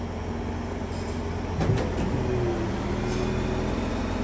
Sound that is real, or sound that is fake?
real